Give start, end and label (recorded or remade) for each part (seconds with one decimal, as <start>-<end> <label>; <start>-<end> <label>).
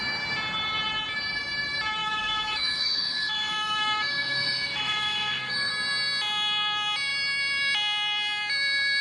0.0-2.0 recorded; 2.0-5.7 remade; 5.7-9.0 recorded